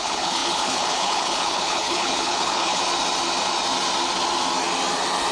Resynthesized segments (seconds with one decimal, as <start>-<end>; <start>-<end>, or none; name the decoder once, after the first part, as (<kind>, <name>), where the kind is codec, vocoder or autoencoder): 0.0-2.8 (codec, HILCodec)